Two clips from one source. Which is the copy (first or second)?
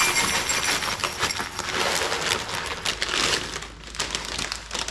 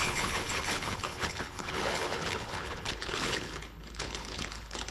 second